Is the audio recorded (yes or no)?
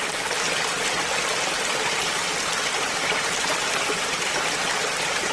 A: yes